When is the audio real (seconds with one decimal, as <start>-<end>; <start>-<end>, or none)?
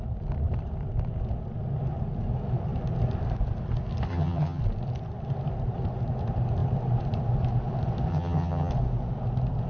0.0-4.1; 4.6-8.1; 8.7-9.7